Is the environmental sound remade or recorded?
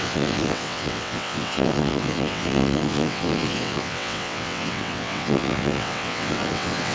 remade